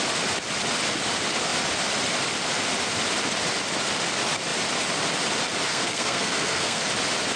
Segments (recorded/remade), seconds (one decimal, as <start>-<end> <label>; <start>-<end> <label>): 0.0-5.7 recorded; 5.7-6.8 remade; 6.8-7.4 recorded